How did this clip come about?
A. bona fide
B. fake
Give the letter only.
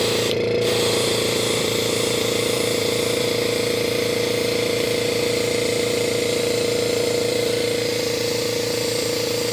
B